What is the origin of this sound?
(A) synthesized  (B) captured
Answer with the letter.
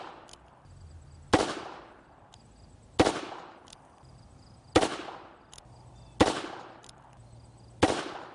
B